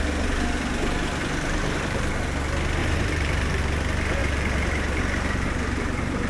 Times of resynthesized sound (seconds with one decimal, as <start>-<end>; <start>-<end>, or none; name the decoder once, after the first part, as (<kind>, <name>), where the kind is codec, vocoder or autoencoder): 1.2-2.1 (vocoder, BigVGAN v2); 2.8-3.6; 4.2-5.0